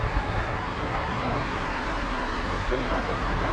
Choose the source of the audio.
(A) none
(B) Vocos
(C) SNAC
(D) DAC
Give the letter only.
C